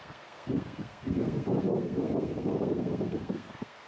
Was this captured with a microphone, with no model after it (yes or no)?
no